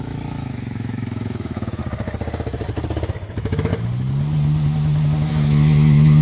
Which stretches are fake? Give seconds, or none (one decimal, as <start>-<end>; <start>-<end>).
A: 0.0-1.8; 3.3-3.7; 5.3-6.2